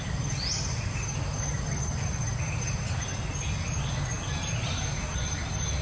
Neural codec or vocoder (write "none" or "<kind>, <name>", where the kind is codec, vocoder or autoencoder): none